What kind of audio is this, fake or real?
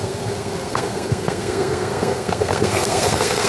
fake